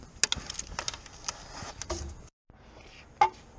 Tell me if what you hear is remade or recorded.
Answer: recorded